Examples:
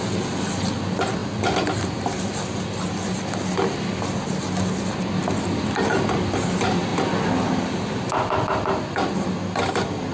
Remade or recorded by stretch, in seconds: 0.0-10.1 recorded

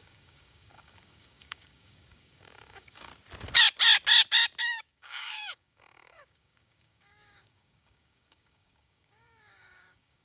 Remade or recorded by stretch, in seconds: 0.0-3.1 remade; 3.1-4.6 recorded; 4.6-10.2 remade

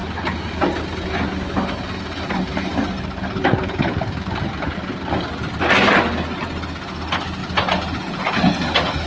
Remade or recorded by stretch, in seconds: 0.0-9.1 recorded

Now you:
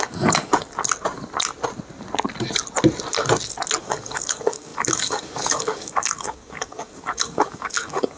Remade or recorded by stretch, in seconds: 0.0-0.5 remade; 0.5-3.8 recorded; 3.8-8.2 remade